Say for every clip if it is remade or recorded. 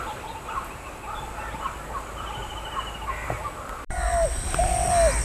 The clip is recorded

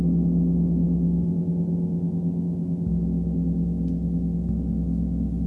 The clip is recorded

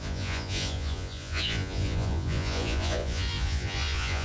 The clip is remade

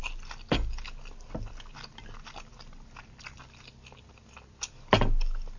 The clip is recorded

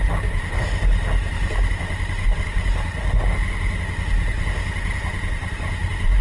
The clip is recorded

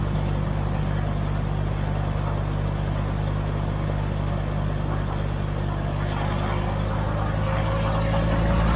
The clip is recorded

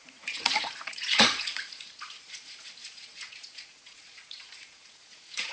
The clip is remade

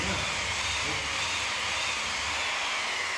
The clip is recorded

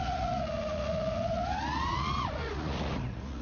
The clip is remade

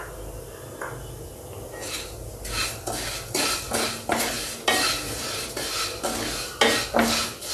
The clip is recorded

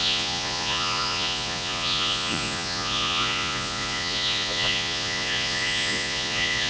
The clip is remade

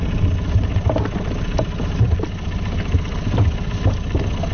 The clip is recorded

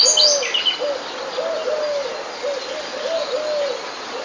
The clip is recorded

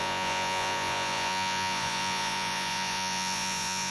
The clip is remade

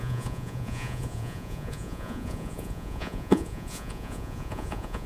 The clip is remade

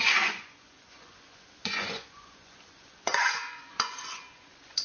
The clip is remade